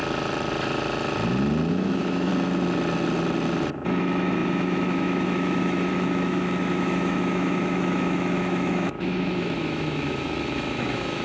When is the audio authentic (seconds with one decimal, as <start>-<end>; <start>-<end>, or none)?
0.0-1.7; 2.3-4.0